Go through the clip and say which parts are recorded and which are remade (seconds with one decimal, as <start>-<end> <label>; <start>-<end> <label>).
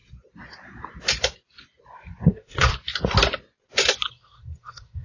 0.0-2.3 recorded; 2.3-2.7 remade; 2.7-4.1 recorded; 4.1-5.0 remade